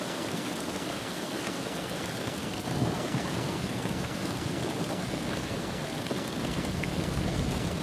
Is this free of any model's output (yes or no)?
no